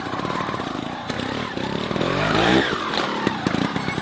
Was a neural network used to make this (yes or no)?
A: yes